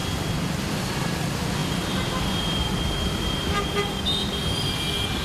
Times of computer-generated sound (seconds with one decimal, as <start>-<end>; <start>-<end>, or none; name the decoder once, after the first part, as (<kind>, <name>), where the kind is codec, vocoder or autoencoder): none